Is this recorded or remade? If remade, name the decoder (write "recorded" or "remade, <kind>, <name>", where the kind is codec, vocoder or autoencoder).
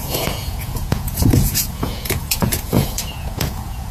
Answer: remade, vocoder, Vocos